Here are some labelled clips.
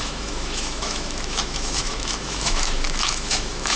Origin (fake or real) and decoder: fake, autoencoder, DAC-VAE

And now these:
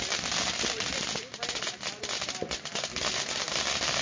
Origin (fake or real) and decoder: real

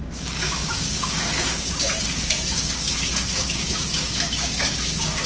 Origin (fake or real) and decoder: fake, codec, DAC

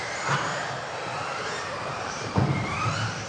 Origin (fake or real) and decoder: fake, vocoder, BigVGAN v2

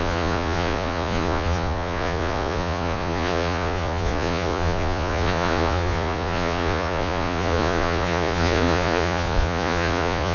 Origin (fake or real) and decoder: fake, vocoder, Vocos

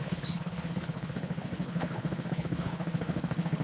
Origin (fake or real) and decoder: fake, codec, HILCodec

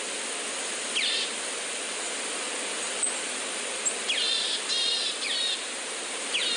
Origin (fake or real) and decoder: real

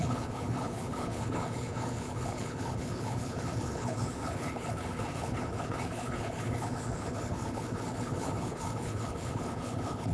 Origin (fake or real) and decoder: fake, codec, HILCodec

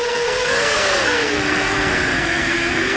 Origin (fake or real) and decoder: fake, codec, SNAC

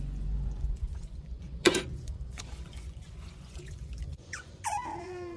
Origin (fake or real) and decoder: fake, vocoder, Vocos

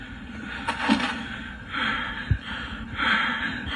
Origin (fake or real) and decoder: real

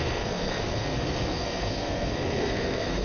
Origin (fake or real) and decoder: fake, codec, SNAC